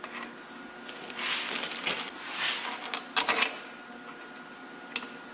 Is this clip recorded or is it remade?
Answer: recorded